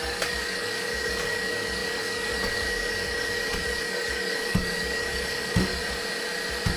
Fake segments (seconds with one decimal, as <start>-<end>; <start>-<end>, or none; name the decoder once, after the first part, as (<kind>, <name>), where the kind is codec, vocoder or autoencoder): 0.0-5.8 (codec, DAC)